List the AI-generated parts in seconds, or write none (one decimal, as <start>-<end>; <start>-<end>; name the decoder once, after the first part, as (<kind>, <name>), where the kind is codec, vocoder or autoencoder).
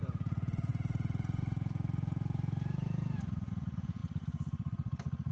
0.0-4.0 (vocoder, Vocos)